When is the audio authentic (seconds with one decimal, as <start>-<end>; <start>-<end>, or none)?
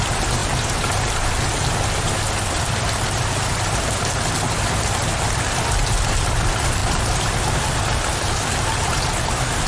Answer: 0.0-0.4; 2.6-6.8; 7.8-9.7